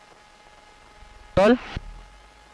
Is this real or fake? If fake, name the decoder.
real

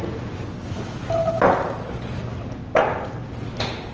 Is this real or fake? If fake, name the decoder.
real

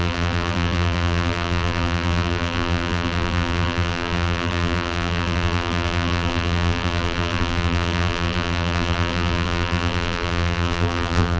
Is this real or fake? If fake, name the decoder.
fake, vocoder, BigVGAN v2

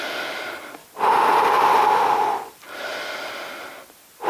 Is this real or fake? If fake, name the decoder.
fake, vocoder, BigVGAN v2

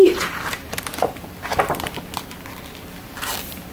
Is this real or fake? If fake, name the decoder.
real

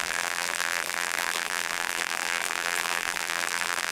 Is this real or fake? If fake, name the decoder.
fake, vocoder, BigVGAN v2